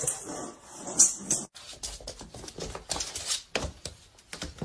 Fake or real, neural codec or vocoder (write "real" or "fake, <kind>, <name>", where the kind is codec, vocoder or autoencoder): real